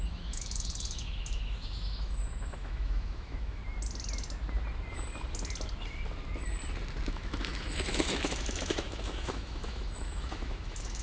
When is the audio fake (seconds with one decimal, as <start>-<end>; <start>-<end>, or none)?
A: 0.0-3.6; 7.1-11.0

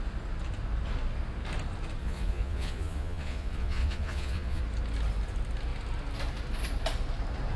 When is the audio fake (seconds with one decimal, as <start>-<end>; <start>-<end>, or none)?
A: 2.0-4.6